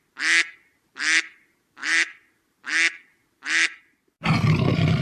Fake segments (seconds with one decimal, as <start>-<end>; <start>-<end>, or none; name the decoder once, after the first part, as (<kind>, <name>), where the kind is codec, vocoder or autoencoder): none